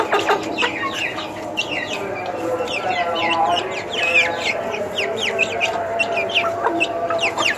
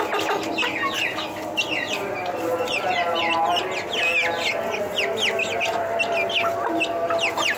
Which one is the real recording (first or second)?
second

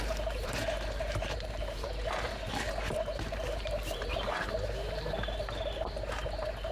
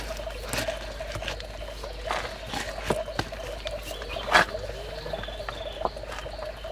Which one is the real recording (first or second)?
second